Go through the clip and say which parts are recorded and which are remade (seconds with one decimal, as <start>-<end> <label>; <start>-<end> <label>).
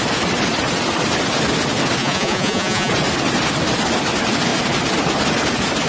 0.0-2.0 recorded; 2.0-2.9 remade; 2.9-5.9 recorded